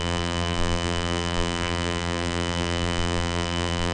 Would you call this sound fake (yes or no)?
yes